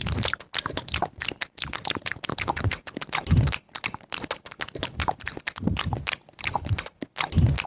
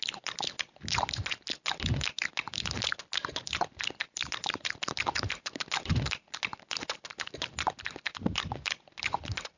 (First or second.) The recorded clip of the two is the second